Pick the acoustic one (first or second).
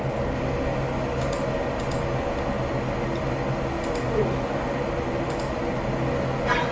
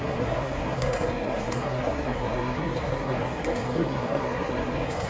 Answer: first